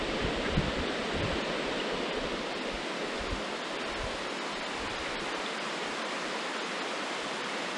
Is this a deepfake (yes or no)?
no